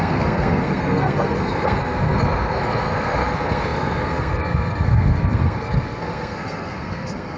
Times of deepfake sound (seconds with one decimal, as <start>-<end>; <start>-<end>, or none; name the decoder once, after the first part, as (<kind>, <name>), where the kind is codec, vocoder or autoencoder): 0.0-7.4 (codec, SNAC)